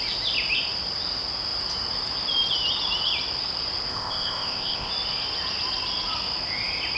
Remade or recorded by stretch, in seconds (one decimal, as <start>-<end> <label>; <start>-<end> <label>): 0.0-3.9 recorded; 3.9-4.9 remade; 4.9-7.0 recorded